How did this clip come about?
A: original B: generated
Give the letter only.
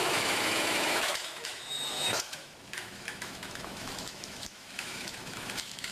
B